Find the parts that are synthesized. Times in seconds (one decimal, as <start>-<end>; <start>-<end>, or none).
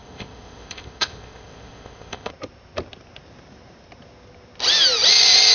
0.0-2.3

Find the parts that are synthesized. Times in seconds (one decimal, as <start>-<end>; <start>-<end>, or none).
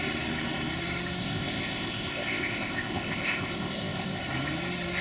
1.2-4.2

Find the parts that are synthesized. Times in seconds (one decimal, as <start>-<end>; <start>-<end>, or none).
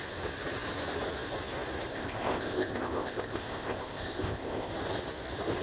1.9-4.7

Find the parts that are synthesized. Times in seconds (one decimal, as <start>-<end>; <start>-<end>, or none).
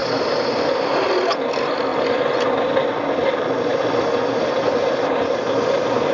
none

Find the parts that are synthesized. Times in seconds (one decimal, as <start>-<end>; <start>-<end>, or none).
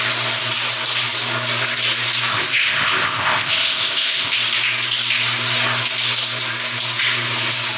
2.3-4.4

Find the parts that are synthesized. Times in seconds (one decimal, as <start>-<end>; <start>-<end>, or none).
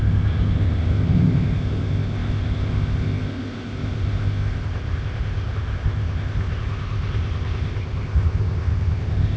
0.0-9.4